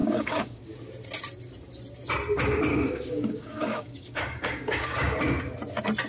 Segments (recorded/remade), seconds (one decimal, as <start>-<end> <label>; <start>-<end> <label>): 0.0-0.7 remade; 0.7-2.7 recorded; 2.7-5.4 remade; 5.4-6.1 recorded